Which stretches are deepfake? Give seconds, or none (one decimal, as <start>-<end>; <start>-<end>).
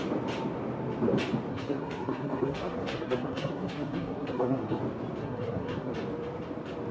1.5-4.8; 5.2-5.9